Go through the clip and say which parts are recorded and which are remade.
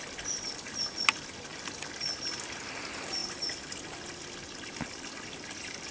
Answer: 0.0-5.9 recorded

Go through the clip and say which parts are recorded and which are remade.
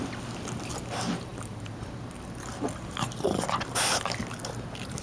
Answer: 0.0-5.0 recorded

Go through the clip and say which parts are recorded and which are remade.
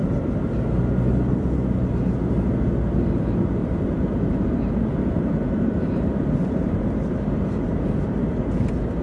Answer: 0.0-3.6 recorded; 3.6-8.0 remade; 8.0-9.0 recorded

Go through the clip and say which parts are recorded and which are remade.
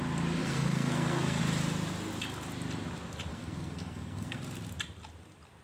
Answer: 0.0-0.4 recorded; 0.4-1.4 remade; 1.4-3.3 recorded; 3.3-4.4 remade; 4.4-5.6 recorded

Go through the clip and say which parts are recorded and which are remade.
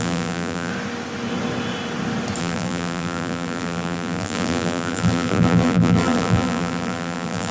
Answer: 0.0-0.7 remade; 0.7-2.4 recorded; 2.4-7.5 remade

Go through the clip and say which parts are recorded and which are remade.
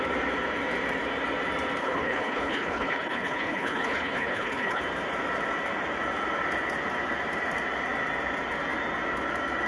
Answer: 0.0-1.8 recorded; 1.8-4.8 remade; 4.8-9.7 recorded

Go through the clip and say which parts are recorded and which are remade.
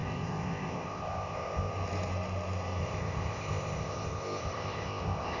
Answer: 0.0-1.7 remade; 1.7-2.8 recorded; 2.8-5.4 remade